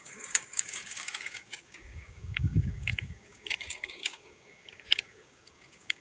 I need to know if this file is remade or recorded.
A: remade